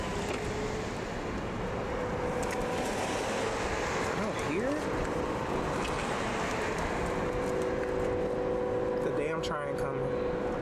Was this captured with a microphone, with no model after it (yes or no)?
yes